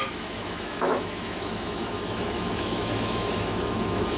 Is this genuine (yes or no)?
no